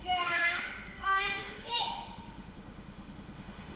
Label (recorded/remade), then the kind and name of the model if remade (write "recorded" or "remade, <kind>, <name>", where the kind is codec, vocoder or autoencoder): remade, autoencoder, DAC-VAE